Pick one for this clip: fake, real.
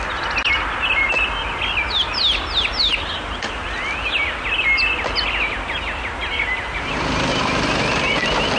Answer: real